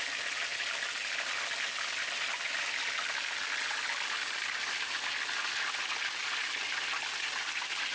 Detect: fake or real real